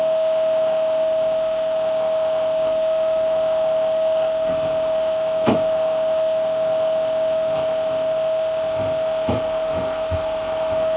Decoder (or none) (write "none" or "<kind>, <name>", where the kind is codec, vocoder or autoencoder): autoencoder, DAC-VAE